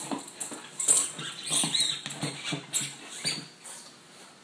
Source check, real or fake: real